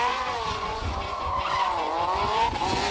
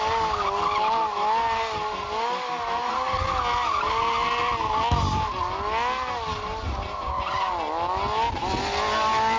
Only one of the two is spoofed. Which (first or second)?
first